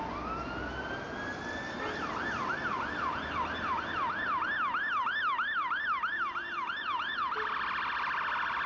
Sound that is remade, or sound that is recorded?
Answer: recorded